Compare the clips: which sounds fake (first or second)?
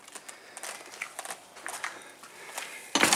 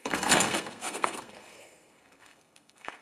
second